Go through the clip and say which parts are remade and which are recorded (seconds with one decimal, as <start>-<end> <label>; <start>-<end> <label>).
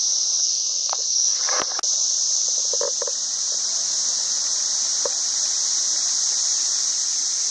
0.0-0.4 recorded; 0.4-1.4 remade; 1.4-7.5 recorded